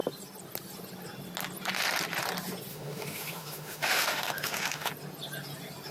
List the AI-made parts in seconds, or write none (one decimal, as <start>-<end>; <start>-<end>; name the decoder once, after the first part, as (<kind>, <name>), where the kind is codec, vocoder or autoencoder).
2.7-4.9 (autoencoder, DAC-VAE)